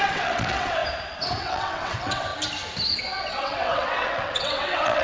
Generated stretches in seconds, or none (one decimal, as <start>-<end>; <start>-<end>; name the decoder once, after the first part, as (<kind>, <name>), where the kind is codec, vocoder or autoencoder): 0.0-0.8 (vocoder, WaveNeXt); 1.4-2.3; 3.2-5.0